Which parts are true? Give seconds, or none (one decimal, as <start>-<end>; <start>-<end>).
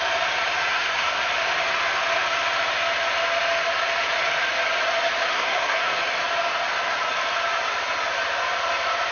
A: 0.0-0.7; 1.2-5.3; 5.9-9.1